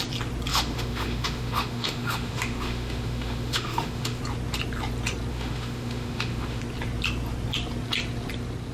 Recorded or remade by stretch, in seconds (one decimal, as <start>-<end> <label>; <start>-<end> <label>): 0.0-0.5 recorded; 0.5-4.2 remade; 4.2-5.3 recorded; 5.3-6.6 remade; 6.6-8.7 recorded